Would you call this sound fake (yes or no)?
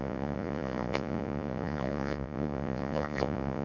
yes